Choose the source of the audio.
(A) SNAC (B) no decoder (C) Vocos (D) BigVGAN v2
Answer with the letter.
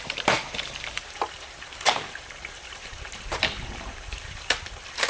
D